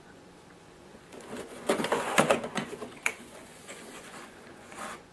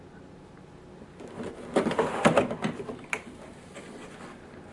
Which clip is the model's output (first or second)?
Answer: first